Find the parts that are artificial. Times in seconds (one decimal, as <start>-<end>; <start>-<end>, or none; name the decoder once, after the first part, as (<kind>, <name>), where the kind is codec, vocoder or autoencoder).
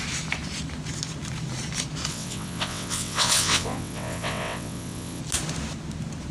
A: 2.1-5.2 (vocoder, WaveNeXt)